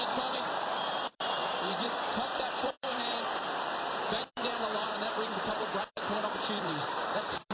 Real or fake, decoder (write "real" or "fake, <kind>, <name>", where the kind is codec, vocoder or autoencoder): fake, vocoder, BigVGAN v2